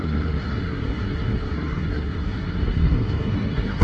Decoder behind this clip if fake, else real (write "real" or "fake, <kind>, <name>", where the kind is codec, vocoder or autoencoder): fake, codec, SNAC